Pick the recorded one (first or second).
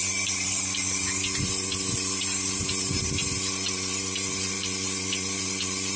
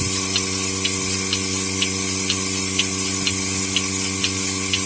second